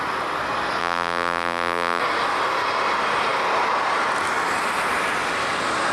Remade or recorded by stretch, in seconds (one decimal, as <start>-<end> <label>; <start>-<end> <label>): 0.0-0.8 recorded; 0.8-2.0 remade; 2.0-5.9 recorded